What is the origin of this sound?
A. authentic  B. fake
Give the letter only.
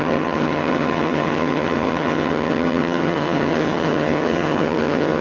B